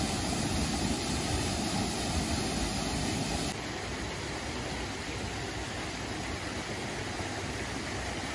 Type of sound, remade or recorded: recorded